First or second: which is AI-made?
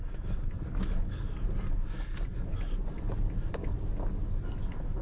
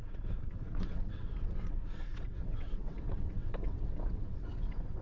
second